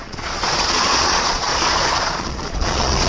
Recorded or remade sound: remade